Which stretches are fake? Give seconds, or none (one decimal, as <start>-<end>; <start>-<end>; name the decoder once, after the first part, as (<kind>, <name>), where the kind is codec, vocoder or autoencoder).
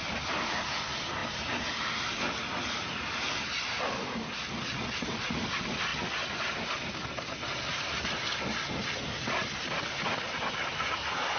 none